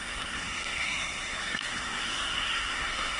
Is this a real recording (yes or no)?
no